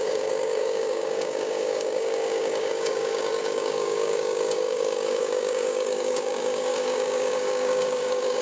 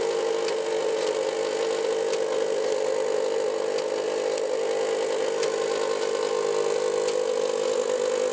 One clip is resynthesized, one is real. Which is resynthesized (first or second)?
first